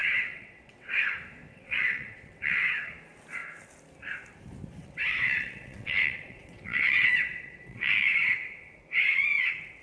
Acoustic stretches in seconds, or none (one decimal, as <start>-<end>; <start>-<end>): 0.9-1.5; 2.9-4.8; 8.8-9.8